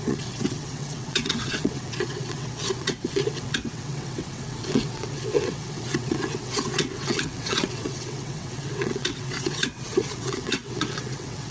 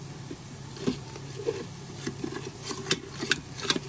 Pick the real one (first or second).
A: second